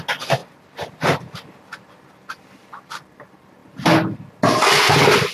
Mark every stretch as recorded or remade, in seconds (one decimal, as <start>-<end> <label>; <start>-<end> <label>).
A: 0.0-5.3 recorded